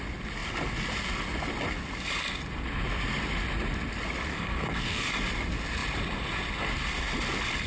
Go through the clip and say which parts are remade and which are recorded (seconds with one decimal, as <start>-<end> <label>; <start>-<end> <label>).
0.0-4.3 recorded; 4.3-5.1 remade; 5.1-7.7 recorded